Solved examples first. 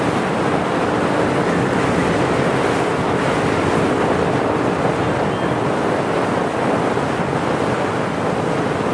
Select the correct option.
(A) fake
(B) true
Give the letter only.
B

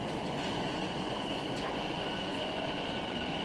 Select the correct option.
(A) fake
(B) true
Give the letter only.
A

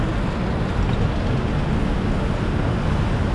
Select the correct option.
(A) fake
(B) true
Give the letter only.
B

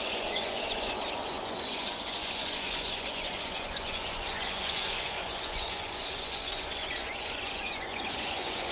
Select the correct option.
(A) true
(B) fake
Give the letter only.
B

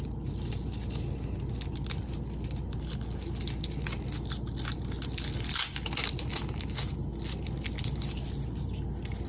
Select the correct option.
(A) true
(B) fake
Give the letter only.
A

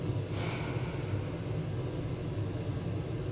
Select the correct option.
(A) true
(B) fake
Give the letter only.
A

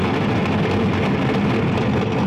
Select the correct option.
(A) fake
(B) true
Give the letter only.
B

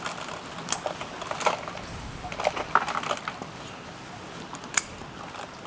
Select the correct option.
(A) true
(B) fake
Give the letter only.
A